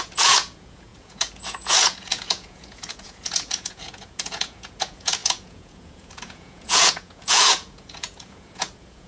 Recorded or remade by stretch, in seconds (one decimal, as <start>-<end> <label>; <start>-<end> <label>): 0.0-9.1 remade